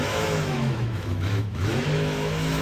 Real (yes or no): no